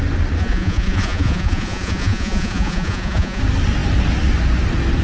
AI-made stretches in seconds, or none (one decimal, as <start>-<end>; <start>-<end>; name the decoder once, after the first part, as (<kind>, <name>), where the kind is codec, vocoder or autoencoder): 0.4-3.4 (vocoder, Vocos)